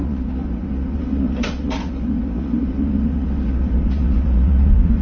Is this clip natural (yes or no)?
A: no